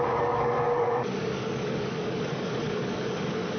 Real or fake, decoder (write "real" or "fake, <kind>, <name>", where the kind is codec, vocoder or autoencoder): fake, codec, DAC